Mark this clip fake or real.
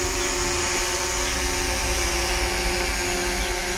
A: real